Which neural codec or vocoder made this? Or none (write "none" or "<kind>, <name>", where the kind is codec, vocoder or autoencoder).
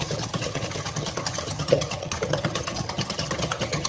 vocoder, HiFi-GAN